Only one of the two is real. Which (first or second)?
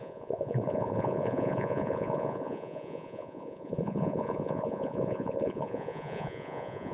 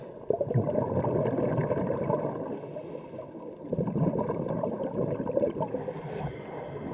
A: second